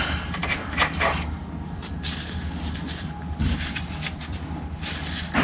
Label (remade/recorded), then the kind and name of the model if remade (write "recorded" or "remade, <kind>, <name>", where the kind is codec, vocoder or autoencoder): remade, vocoder, BigVGAN v2